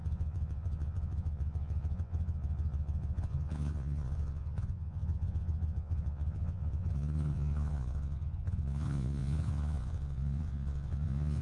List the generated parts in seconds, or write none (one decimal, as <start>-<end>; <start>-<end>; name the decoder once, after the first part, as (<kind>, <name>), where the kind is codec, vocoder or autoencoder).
0.0-11.4 (vocoder, Vocos)